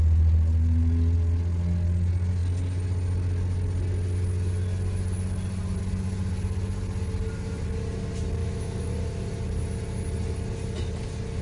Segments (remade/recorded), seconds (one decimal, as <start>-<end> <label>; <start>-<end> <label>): 0.0-8.4 recorded; 8.4-8.9 remade; 8.9-11.4 recorded